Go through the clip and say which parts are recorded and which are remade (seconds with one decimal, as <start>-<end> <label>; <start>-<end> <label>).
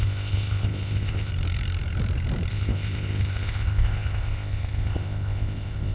0.0-1.3 remade; 1.3-2.5 recorded; 2.5-5.9 remade